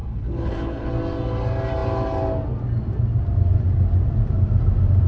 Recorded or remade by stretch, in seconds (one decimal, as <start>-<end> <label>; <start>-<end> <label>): 0.0-0.9 remade; 0.9-5.1 recorded